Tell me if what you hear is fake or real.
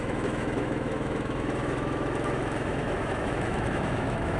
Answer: fake